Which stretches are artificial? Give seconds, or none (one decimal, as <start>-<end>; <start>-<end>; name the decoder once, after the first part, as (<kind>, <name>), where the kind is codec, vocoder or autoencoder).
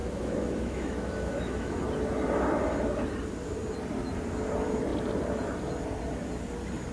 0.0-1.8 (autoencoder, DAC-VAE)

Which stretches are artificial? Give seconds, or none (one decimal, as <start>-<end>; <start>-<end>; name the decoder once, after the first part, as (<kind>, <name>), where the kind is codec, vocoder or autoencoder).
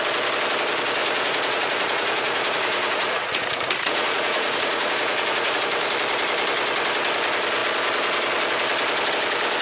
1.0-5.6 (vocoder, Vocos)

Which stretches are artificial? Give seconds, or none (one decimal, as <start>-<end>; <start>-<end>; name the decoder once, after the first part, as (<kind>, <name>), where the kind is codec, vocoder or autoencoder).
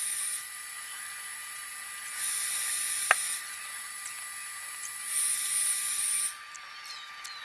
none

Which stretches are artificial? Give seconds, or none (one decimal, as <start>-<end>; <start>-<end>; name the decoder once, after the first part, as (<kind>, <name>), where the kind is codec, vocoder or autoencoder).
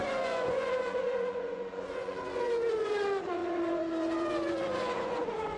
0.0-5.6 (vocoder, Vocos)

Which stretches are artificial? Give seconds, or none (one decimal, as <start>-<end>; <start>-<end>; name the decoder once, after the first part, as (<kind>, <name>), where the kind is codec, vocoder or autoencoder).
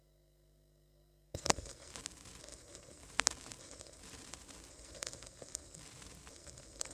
0.0-1.9 (codec, SNAC); 2.4-3.0; 3.6-4.0; 4.7-5.8; 6.3-6.9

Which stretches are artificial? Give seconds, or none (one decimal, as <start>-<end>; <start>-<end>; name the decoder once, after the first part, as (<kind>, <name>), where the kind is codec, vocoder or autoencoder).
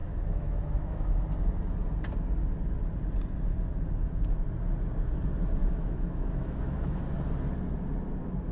0.0-1.2 (autoencoder, DAC-VAE); 5.6-7.0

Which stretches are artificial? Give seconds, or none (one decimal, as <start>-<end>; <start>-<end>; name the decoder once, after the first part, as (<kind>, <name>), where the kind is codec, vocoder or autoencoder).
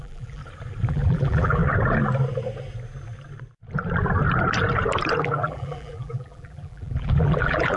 0.0-0.4 (vocoder, BigVGAN v2); 0.9-1.6; 5.2-7.8